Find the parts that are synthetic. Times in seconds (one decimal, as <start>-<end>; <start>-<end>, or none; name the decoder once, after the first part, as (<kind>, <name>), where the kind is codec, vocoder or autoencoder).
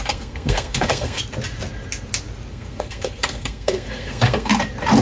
0.0-1.2 (codec, SNAC); 2.5-4.5